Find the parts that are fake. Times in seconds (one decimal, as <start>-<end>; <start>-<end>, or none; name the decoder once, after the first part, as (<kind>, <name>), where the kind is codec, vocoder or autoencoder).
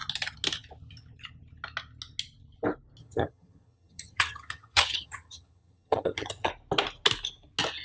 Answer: 3.0-6.5 (vocoder, HiFi-GAN)